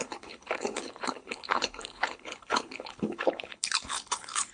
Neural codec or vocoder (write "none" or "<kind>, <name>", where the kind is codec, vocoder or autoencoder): codec, HILCodec